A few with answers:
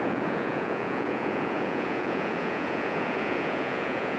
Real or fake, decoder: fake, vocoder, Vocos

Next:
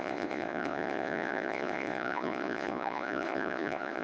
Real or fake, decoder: fake, vocoder, Vocos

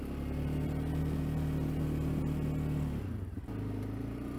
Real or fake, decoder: real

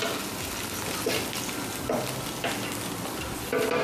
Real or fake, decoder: real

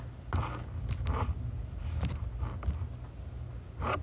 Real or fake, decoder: real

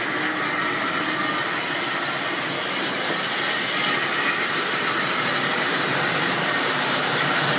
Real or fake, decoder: real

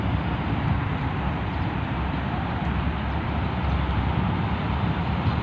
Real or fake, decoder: fake, vocoder, BigVGAN v2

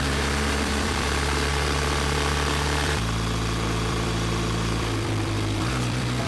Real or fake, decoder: fake, vocoder, BigVGAN v2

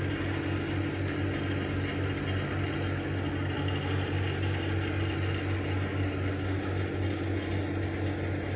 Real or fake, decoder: real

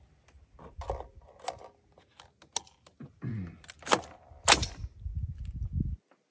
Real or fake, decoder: real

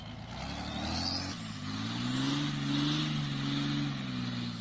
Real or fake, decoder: real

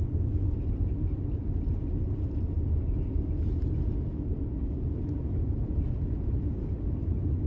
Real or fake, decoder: real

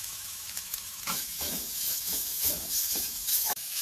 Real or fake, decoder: fake, autoencoder, DAC-VAE